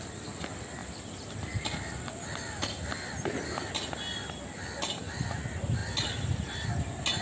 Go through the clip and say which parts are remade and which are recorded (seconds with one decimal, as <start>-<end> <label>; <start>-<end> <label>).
0.0-7.2 recorded